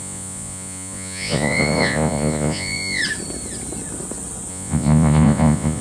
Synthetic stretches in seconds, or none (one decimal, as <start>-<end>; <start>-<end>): 0.0-3.0; 4.5-5.8